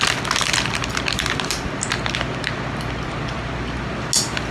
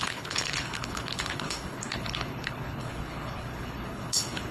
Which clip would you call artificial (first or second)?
second